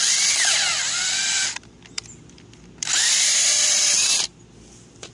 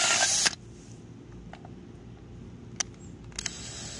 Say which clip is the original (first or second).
second